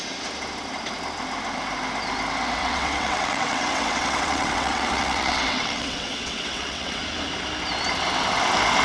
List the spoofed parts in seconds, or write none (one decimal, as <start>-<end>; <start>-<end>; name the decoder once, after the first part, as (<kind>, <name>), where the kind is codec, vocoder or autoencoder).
2.6-7.0 (vocoder, WaveNeXt)